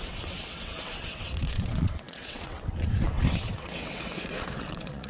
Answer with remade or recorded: remade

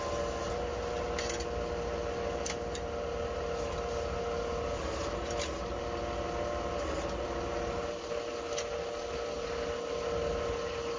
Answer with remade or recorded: recorded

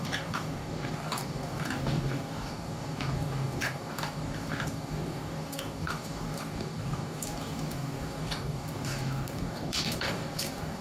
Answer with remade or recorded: remade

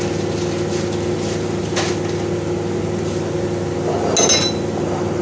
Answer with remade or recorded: recorded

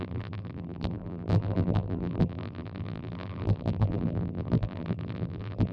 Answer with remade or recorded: remade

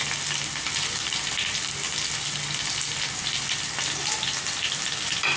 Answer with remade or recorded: recorded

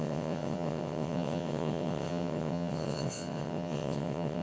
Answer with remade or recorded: remade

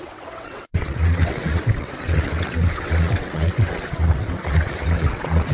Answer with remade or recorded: remade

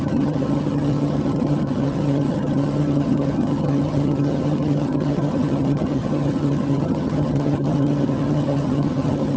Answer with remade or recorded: remade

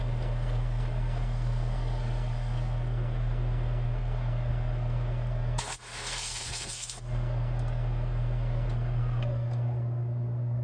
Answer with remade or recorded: remade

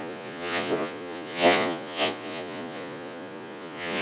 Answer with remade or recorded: remade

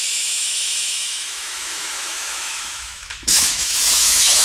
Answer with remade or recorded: remade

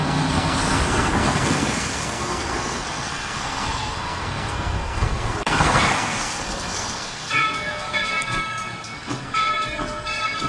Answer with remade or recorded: remade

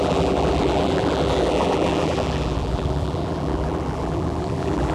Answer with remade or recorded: remade